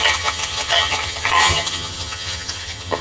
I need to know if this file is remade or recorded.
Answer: remade